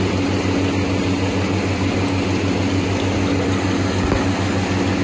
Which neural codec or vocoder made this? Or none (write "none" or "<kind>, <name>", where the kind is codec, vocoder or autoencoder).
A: none